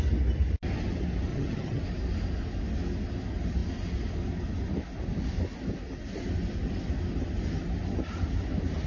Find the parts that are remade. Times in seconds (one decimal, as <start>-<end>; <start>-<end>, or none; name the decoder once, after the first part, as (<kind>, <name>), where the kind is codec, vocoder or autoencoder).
1.3-1.8 (vocoder, HiFi-GAN)